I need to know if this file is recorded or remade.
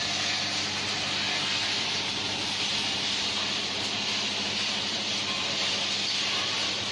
remade